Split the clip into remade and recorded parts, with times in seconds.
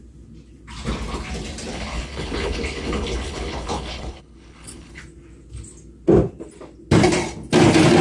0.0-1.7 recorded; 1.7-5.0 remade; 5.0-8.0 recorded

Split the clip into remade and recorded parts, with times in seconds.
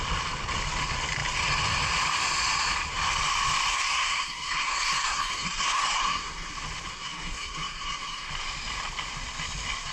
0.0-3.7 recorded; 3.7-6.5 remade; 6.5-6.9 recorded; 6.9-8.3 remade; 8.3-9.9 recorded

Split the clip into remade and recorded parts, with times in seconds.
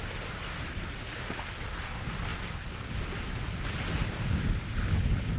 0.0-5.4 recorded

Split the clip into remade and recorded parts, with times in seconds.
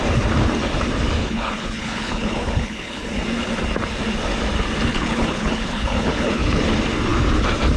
0.0-1.2 recorded; 1.2-3.1 remade; 3.1-4.9 recorded; 4.9-6.6 remade; 6.6-7.8 recorded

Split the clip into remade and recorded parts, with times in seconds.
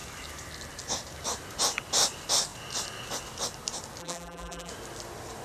0.0-4.0 recorded; 4.0-4.7 remade; 4.7-5.4 recorded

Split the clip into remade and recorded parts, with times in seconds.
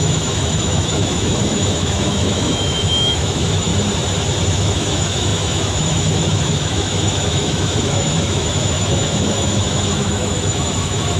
0.0-3.7 remade; 3.7-4.5 recorded; 4.5-11.2 remade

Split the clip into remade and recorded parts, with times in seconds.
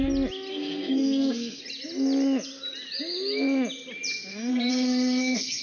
0.0-0.5 recorded; 0.5-1.6 remade; 1.6-4.3 recorded; 4.3-5.6 remade